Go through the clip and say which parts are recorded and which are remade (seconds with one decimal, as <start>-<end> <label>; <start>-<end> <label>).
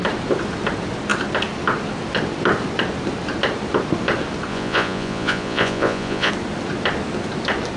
0.0-4.5 recorded; 4.5-6.3 remade; 6.3-7.8 recorded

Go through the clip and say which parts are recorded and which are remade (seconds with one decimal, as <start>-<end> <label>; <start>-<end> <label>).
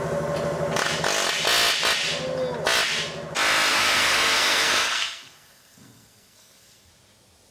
0.0-3.7 recorded; 3.7-6.9 remade; 6.9-7.5 recorded